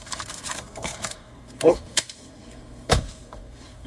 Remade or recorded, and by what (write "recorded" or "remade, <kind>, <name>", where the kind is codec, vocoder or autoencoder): remade, codec, SNAC